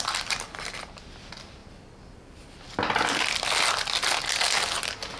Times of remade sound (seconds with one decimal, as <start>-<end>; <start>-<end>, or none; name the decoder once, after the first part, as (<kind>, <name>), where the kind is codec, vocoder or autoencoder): 1.6-4.2 (vocoder, BigVGAN v2)